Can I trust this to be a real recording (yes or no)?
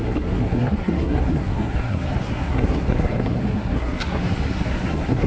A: no